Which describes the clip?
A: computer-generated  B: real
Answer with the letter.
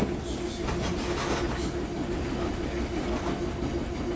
B